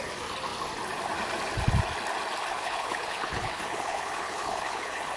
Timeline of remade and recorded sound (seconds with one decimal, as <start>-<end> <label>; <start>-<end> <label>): 0.0-2.5 recorded; 2.5-5.2 remade